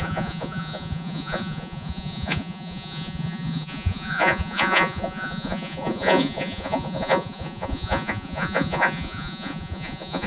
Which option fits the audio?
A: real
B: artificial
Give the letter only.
B